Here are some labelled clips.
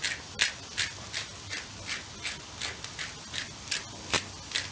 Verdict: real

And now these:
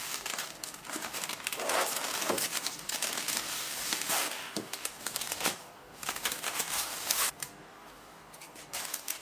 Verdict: fake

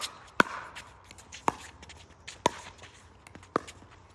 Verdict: real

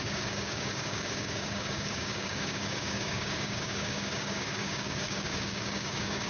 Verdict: fake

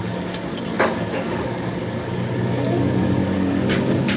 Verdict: fake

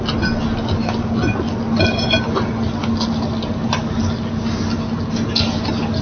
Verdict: real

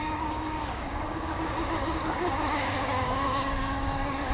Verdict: fake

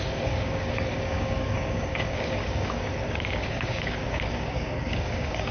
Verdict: fake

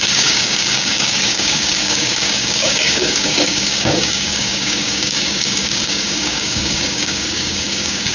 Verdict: fake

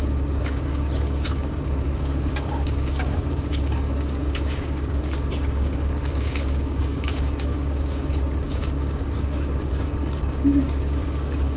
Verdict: fake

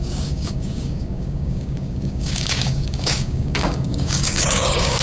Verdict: fake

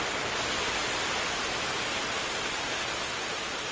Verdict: real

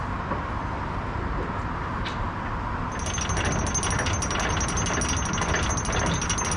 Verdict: real